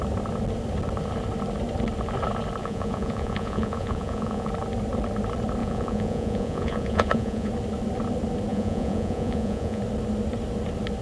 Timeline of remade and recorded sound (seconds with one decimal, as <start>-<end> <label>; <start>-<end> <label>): 0.0-2.6 recorded; 2.6-4.5 remade; 4.5-5.6 recorded; 5.6-7.5 remade; 7.5-8.5 recorded; 8.5-9.8 remade; 9.8-11.0 recorded